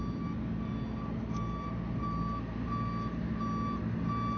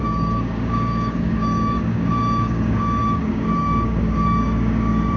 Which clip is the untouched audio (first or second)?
first